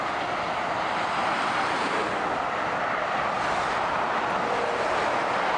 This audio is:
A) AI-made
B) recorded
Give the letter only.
A